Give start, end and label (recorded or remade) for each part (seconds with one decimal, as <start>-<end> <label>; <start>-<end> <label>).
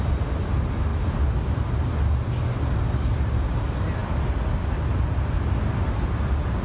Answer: 0.0-6.6 recorded